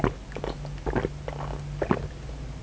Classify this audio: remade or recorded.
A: recorded